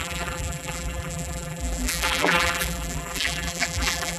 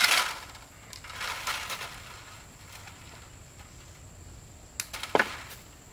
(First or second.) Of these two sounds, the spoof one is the first